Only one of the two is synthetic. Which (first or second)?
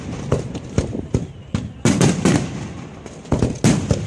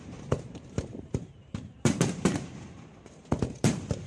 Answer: second